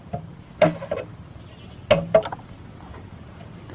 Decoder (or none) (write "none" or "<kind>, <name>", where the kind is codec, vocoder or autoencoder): none